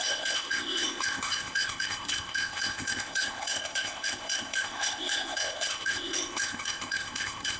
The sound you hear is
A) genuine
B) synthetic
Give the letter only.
B